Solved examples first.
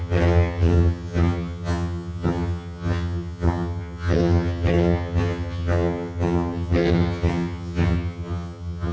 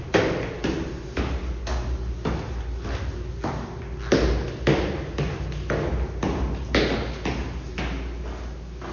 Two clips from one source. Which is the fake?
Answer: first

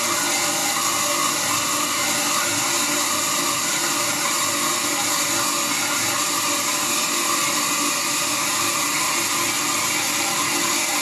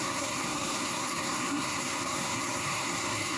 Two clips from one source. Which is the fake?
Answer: second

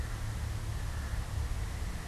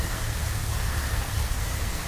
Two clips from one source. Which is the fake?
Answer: second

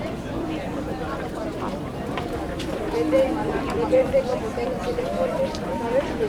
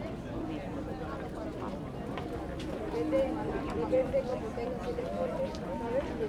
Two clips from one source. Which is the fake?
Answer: first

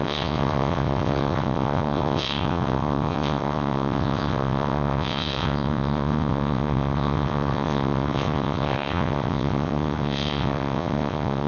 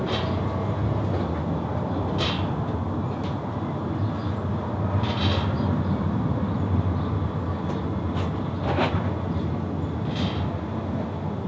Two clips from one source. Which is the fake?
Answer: first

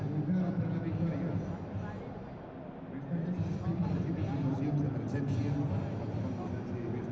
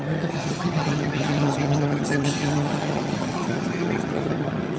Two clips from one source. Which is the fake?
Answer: second